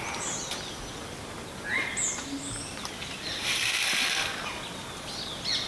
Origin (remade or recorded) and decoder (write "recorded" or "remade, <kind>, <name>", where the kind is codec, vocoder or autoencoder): recorded